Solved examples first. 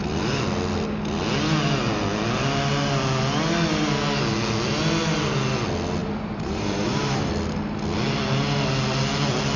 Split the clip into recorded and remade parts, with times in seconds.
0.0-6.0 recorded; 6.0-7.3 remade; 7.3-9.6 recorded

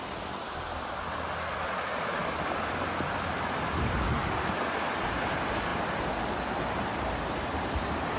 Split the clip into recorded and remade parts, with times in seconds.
0.0-8.2 recorded

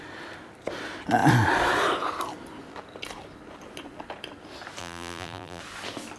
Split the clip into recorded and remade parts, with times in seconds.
0.0-4.8 recorded; 4.8-5.6 remade; 5.6-6.2 recorded

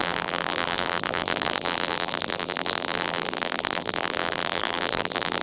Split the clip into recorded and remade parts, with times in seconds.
0.0-5.4 remade